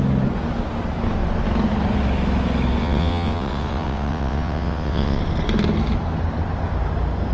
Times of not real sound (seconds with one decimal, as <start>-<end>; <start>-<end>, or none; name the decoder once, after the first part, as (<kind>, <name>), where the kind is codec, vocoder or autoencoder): 2.8-5.2 (vocoder, WaveNeXt)